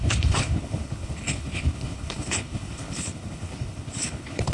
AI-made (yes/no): yes